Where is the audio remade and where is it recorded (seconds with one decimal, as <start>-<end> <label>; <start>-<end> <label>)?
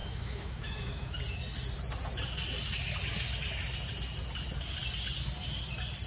0.0-1.2 remade; 1.2-6.1 recorded